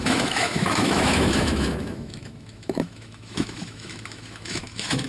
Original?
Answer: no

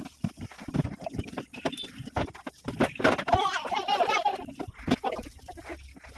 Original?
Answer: yes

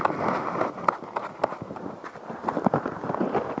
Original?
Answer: yes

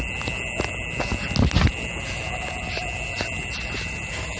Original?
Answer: yes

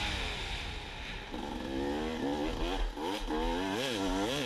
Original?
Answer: yes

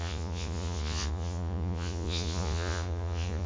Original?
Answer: no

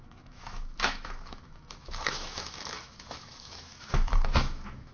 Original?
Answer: no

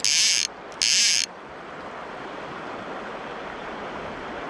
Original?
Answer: yes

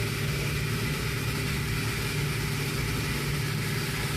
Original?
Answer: yes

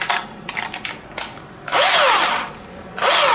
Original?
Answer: yes